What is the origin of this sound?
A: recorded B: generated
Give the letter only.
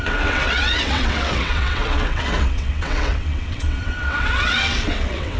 B